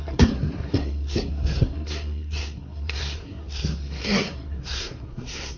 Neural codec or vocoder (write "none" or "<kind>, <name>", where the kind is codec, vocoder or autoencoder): codec, SNAC